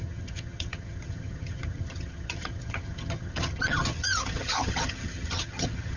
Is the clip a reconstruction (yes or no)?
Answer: yes